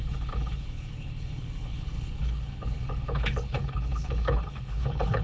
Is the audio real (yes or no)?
no